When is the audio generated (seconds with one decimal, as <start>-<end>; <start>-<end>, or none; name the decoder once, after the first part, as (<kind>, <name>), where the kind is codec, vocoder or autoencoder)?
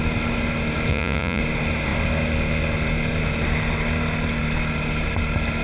0.9-1.4 (vocoder, Vocos)